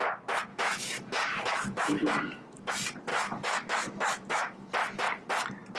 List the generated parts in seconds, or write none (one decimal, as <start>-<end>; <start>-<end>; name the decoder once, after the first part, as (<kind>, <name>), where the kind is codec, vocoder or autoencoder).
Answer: 0.5-2.7 (autoencoder, DAC-VAE); 3.1-4.7